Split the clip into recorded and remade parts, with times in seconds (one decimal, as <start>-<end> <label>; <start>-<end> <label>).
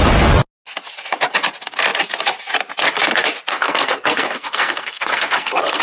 0.0-3.5 recorded; 3.5-5.8 remade